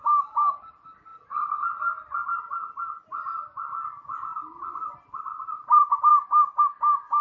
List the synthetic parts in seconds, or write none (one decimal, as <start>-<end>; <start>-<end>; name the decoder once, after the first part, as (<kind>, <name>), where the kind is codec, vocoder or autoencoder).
4.3-4.8 (vocoder, BigVGAN v2); 6.1-6.6